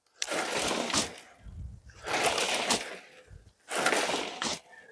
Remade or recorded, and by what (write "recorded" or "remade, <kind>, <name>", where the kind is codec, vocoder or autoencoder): recorded